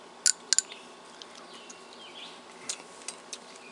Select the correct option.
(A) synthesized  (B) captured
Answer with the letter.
B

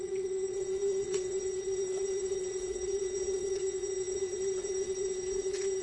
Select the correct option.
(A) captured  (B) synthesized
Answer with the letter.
B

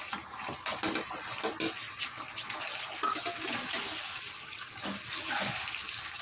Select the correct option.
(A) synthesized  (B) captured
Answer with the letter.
B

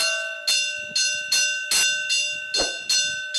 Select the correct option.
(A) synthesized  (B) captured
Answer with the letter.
B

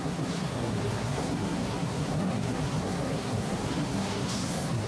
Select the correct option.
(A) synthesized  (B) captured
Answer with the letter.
A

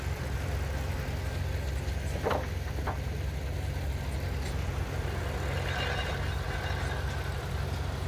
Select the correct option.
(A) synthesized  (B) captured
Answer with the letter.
B